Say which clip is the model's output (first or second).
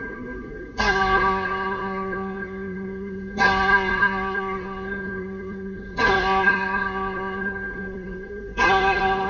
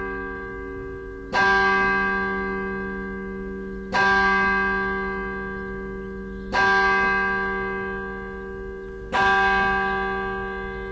first